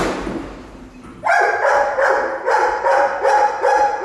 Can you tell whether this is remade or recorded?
recorded